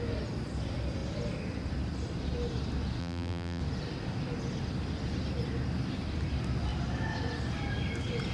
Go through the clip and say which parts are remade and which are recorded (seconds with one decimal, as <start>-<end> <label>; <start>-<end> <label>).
0.0-3.0 recorded; 3.0-3.6 remade; 3.6-8.3 recorded